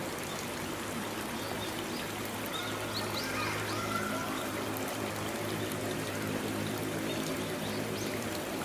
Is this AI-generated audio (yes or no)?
no